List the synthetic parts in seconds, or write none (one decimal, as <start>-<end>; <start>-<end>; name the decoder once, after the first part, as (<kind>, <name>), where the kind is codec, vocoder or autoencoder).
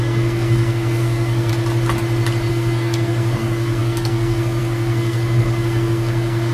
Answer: 0.0-1.5 (codec, SNAC); 2.5-6.5